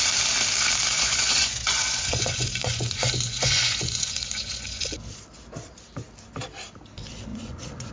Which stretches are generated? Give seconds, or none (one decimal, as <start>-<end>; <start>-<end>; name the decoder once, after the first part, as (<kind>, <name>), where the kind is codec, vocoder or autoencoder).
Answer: 0.9-4.9 (vocoder, Vocos); 7.3-7.9